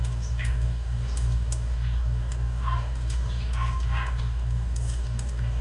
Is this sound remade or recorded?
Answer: remade